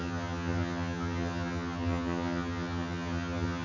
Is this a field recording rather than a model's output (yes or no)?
no